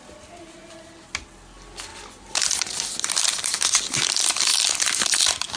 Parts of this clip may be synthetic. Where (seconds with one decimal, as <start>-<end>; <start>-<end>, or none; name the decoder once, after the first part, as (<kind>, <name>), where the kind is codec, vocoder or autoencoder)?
none